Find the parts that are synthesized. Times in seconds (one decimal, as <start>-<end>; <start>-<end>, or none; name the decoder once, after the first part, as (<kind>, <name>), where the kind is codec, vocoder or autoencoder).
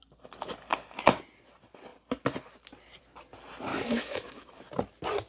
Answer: 3.7-4.6 (autoencoder, DAC-VAE)